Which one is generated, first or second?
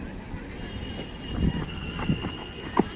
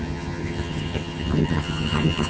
second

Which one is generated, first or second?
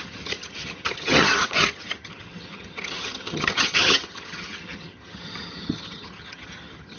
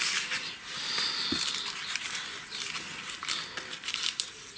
first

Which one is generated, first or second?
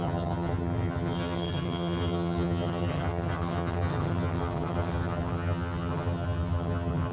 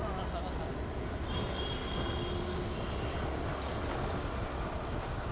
first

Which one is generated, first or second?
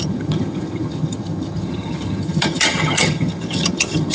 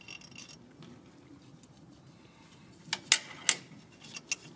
first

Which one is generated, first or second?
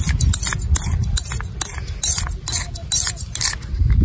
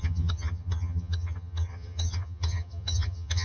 second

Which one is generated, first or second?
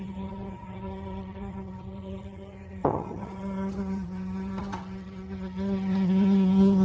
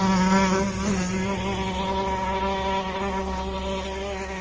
first